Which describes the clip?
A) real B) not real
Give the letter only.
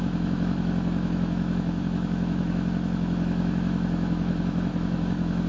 B